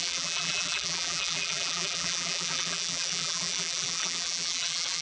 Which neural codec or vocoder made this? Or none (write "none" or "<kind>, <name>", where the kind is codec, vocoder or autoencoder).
vocoder, BigVGAN v2